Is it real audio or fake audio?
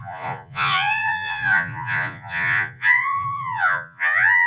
fake